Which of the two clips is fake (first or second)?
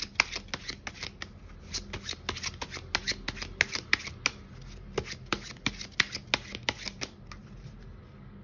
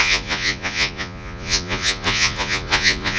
second